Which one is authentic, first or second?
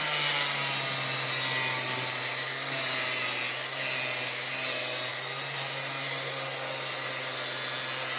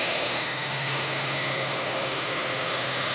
first